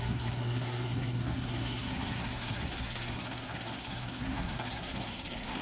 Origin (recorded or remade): remade